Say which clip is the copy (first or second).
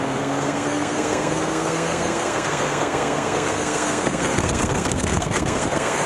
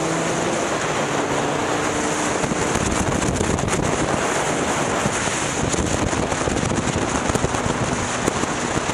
first